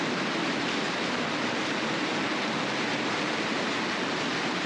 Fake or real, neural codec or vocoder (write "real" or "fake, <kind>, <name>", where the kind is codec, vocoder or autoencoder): fake, vocoder, BigVGAN v2